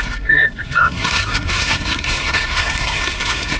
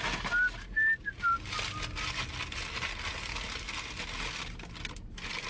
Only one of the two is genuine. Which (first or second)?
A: second